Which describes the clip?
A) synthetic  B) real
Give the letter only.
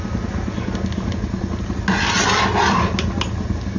B